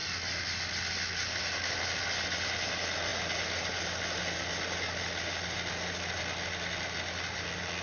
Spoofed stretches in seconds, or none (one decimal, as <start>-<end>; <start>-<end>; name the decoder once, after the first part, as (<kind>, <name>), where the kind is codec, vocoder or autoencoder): none